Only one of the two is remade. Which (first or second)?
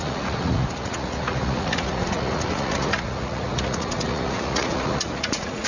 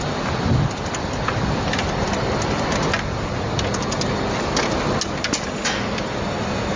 first